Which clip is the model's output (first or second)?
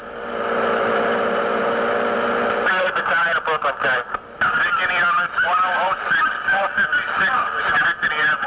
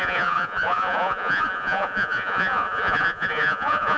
second